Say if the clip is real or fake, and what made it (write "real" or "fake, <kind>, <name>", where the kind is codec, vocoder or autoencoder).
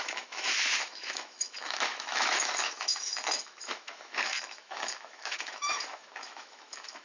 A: fake, autoencoder, DAC-VAE